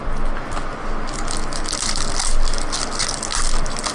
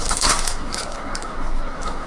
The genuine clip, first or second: first